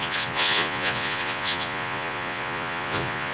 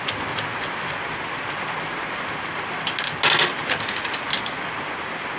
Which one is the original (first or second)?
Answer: second